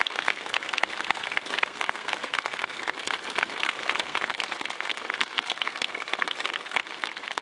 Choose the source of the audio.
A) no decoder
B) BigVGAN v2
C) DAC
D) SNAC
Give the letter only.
D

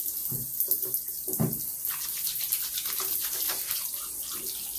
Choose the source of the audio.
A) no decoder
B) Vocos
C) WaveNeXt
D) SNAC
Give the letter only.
A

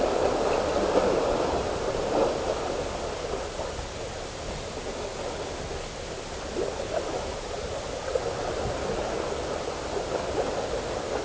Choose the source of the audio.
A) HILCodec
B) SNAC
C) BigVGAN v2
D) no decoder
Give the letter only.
D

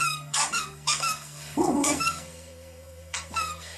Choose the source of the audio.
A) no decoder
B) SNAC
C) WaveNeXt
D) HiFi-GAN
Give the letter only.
B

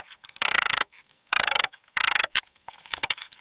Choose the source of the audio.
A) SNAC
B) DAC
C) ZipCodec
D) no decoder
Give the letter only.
A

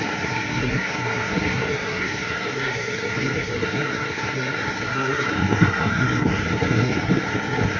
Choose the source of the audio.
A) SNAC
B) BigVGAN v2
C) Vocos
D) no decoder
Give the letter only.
A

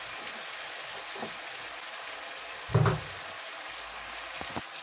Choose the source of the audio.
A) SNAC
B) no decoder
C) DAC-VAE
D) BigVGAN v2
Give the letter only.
B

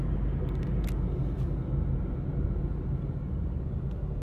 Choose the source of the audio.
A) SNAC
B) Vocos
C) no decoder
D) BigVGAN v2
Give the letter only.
C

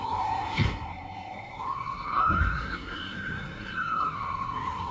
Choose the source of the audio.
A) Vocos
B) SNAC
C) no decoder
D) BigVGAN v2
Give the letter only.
B